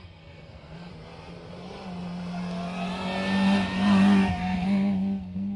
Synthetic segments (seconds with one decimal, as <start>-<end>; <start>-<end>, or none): 0.0-0.9; 4.3-5.6